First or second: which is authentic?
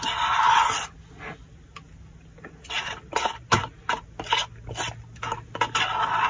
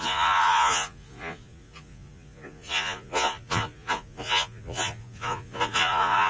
first